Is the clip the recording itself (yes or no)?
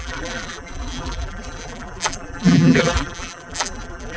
no